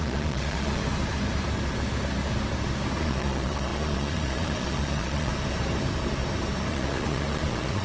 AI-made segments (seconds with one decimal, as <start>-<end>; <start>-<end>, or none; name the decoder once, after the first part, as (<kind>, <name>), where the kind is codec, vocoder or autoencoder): 0.0-0.8 (vocoder, Vocos); 3.0-5.3; 6.7-7.8